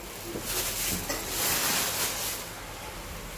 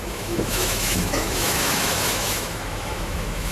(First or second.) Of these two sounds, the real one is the first